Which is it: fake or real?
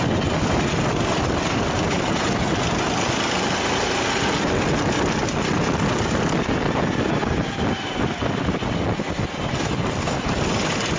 real